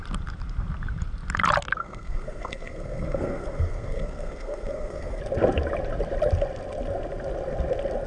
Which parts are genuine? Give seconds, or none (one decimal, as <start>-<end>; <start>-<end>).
0.0-1.8; 5.2-8.1